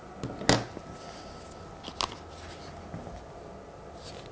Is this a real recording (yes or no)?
yes